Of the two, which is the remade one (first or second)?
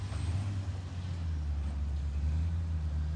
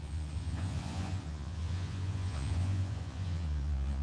second